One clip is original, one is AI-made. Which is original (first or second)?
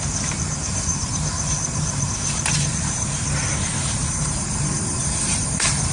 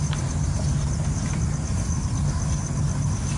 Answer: second